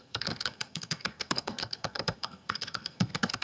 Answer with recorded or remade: remade